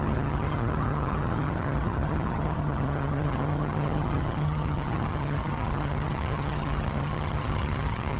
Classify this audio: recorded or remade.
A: remade